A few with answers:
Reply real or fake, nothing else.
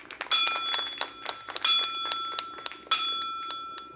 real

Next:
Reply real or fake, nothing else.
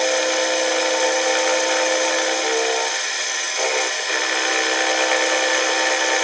real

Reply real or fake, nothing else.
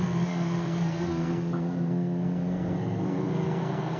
fake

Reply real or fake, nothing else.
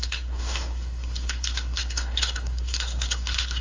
fake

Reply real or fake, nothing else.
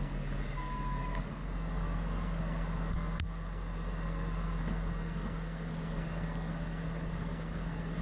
fake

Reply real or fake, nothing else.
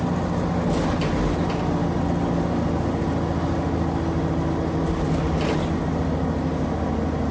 real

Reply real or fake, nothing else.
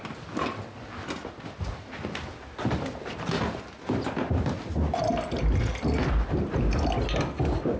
real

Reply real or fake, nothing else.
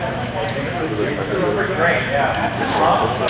fake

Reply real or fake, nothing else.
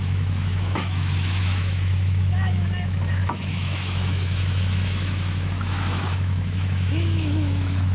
fake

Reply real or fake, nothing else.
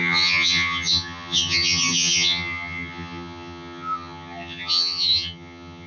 fake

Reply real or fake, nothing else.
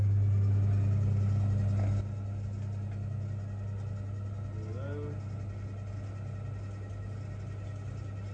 real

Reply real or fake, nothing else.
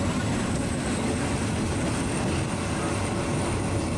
real